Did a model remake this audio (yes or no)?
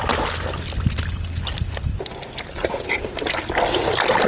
no